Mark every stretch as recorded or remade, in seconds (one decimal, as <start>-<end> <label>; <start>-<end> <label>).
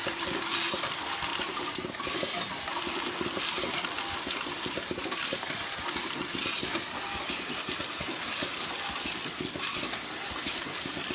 0.0-11.1 recorded